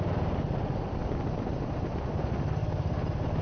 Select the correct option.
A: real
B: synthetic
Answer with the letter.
A